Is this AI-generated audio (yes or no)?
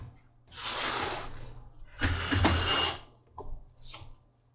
no